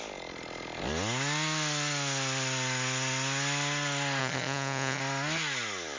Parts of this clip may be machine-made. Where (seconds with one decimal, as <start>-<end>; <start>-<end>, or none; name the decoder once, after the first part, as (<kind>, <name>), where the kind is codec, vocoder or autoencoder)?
4.2-5.0 (vocoder, HiFi-GAN)